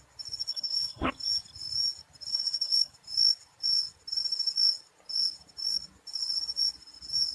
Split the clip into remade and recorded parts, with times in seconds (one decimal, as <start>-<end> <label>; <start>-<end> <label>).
0.0-0.5 recorded; 0.5-1.1 remade; 1.1-2.3 recorded; 2.3-2.9 remade; 2.9-7.3 recorded